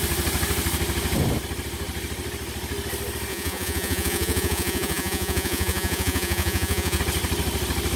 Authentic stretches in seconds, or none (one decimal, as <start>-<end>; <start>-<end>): 0.0-3.3; 7.0-8.0